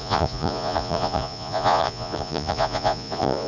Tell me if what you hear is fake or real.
fake